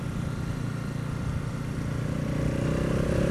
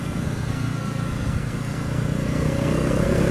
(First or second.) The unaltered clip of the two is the first